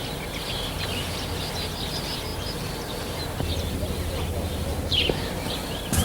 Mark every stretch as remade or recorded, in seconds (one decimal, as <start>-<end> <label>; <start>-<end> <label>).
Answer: 0.0-2.3 recorded; 2.3-3.2 remade; 3.2-4.7 recorded; 4.7-5.3 remade; 5.3-6.0 recorded